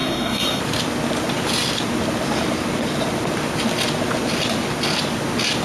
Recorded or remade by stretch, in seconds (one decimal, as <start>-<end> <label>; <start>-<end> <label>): 0.0-0.6 remade; 0.6-5.6 recorded